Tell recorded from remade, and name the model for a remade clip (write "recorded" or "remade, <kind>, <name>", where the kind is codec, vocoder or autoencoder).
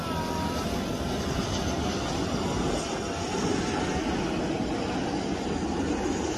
recorded